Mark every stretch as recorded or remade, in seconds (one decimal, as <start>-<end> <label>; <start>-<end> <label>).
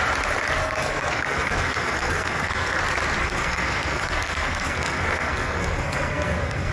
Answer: 0.0-0.6 recorded; 0.6-2.8 remade; 2.8-3.2 recorded; 3.2-6.7 remade